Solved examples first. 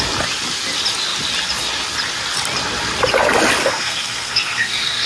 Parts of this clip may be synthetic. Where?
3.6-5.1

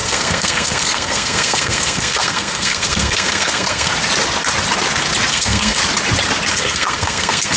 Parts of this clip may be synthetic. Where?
0.0-3.9; 5.3-5.8; 6.5-7.6

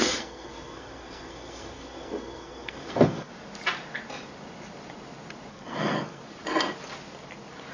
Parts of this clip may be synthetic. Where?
0.0-3.3; 5.5-6.2

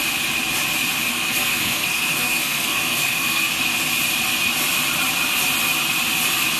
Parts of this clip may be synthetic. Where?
1.1-3.5

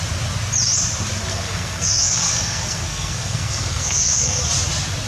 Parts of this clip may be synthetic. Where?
1.3-4.4

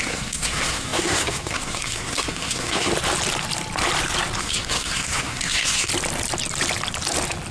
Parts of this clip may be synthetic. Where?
0.0-2.9; 4.4-5.9

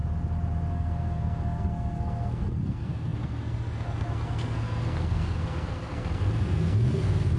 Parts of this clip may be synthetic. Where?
0.7-7.4